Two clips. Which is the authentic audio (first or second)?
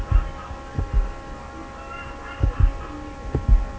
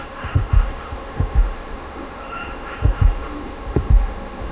first